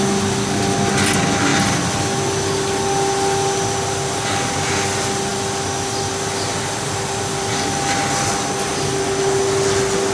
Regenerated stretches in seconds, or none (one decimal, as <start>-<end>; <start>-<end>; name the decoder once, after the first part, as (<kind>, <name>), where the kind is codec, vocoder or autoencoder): none